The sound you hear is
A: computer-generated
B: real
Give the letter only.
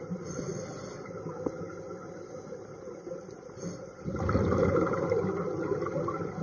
B